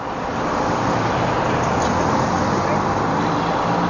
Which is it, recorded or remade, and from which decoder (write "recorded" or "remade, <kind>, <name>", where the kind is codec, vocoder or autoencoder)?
recorded